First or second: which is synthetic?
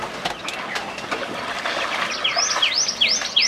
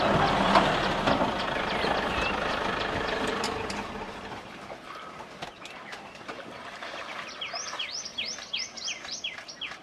second